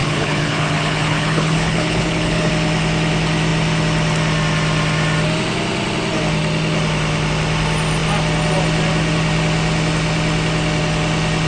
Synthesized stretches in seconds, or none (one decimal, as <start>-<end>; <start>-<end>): 0.0-2.5